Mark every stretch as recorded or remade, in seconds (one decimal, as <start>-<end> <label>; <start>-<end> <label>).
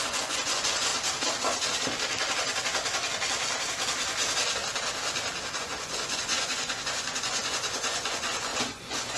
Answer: 0.0-0.9 remade; 0.9-5.6 recorded; 5.6-9.2 remade